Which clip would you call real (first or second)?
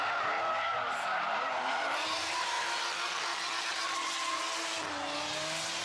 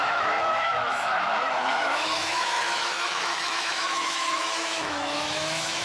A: first